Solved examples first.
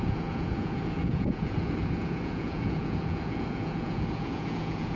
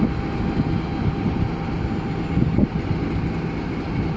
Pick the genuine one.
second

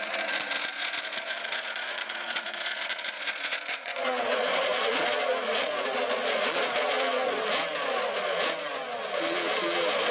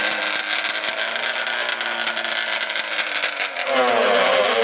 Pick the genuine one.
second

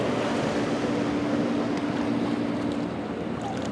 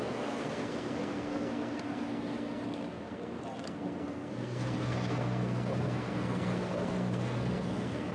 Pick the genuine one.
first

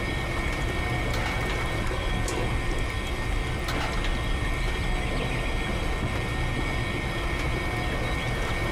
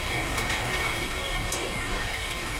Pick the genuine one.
first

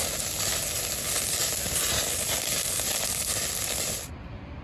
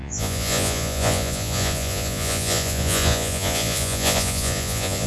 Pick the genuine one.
first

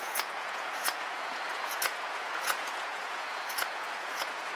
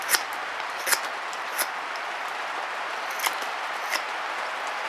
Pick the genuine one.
second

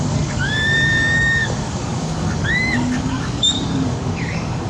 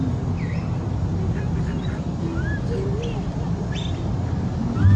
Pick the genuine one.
second